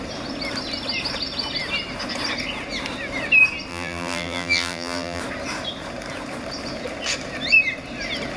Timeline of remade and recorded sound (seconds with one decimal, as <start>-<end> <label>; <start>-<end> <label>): 0.0-3.7 recorded; 3.7-5.2 remade; 5.2-8.4 recorded